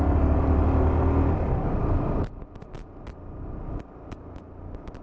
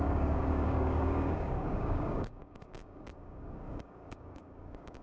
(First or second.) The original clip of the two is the first